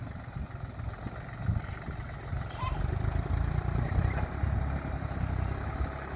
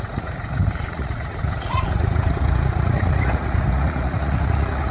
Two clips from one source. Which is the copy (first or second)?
second